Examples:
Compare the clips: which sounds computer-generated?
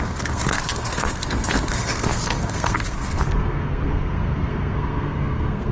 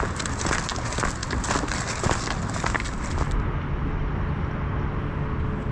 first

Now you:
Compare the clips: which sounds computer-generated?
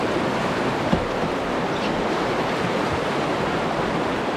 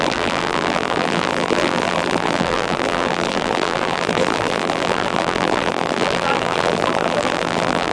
second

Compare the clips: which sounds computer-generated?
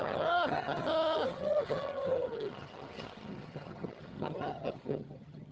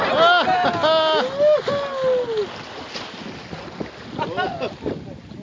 first